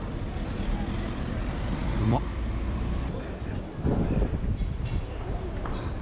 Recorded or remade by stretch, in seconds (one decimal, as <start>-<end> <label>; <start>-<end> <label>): 0.0-6.0 remade

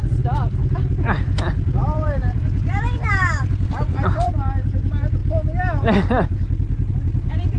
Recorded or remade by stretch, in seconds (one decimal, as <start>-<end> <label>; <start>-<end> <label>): 0.0-1.8 recorded; 1.8-4.3 remade; 4.3-7.6 recorded